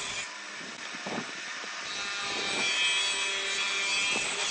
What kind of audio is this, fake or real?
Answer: real